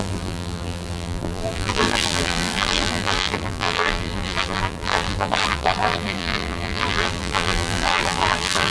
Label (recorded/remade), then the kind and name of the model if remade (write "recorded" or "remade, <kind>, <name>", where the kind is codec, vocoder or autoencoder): remade, vocoder, BigVGAN v2